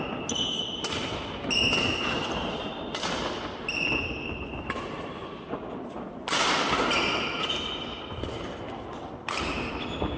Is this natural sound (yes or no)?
yes